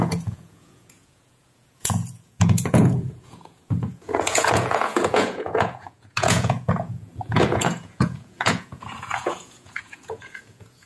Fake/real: fake